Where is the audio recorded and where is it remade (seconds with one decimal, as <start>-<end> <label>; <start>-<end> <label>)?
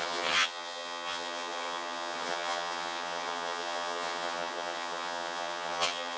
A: 0.0-6.2 remade